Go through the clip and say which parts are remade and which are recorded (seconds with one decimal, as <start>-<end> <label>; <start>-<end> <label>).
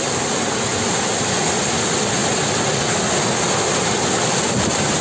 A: 0.0-5.0 recorded